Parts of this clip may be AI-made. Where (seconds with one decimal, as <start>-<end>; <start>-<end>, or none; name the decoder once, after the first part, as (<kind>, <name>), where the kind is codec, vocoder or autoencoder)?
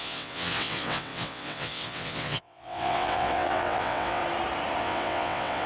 0.0-4.2 (vocoder, WaveNeXt); 4.8-5.7